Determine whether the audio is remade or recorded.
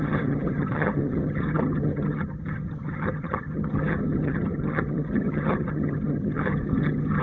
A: remade